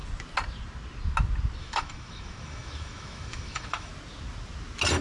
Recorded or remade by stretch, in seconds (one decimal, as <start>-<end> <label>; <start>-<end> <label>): 0.0-1.6 recorded; 1.6-3.9 remade; 3.9-5.0 recorded